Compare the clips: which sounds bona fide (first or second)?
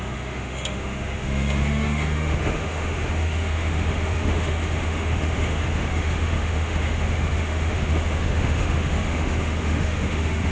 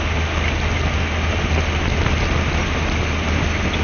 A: second